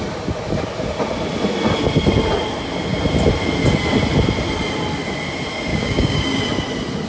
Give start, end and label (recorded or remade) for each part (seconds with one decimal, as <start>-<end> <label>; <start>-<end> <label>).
0.0-5.7 recorded; 5.7-6.4 remade; 6.4-7.1 recorded